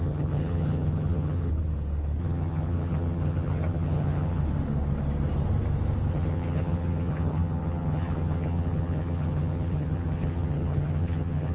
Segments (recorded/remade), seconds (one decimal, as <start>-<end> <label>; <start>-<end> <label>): 0.0-1.5 remade; 1.5-2.2 recorded; 2.2-4.4 remade; 4.4-6.1 recorded; 6.1-11.5 remade